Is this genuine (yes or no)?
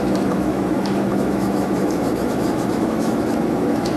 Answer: no